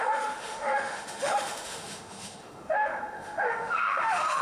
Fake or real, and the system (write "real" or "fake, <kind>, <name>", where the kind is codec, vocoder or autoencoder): fake, autoencoder, DAC-VAE